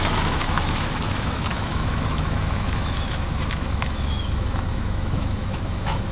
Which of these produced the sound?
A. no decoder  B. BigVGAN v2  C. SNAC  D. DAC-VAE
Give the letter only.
D